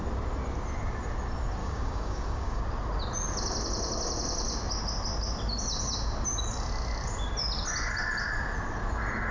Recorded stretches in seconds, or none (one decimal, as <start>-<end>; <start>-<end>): 0.0-1.6; 2.6-9.3

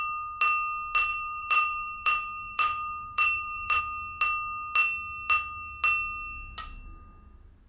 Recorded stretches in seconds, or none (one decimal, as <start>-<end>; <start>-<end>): 0.0-1.1; 3.8-7.7

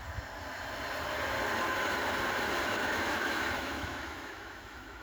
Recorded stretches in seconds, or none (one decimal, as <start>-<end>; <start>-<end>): 0.0-2.7

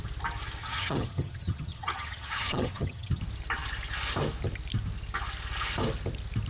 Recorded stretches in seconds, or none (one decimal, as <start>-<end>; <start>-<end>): 0.0-0.6; 3.2-6.5

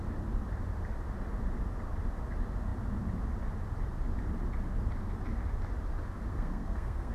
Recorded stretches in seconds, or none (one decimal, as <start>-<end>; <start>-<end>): 0.0-6.3

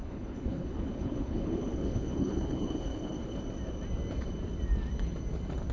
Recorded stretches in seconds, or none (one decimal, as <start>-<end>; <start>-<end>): 3.4-5.7